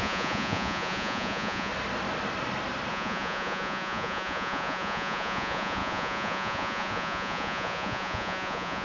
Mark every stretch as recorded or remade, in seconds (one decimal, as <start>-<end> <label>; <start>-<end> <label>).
0.0-1.7 remade; 1.7-2.9 recorded; 2.9-8.8 remade